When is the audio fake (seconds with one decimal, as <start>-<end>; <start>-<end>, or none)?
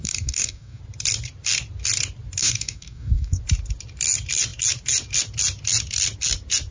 0.0-0.8; 2.4-3.4